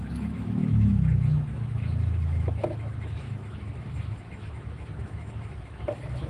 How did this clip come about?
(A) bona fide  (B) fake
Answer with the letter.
B